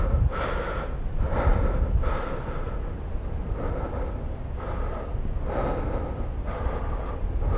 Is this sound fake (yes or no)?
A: no